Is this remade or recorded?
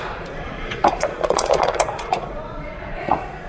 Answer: remade